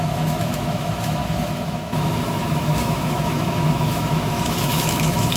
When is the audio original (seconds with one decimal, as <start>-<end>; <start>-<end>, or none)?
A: none